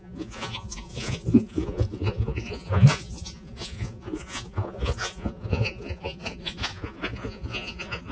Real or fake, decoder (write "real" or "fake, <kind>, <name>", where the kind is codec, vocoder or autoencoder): fake, vocoder, Vocos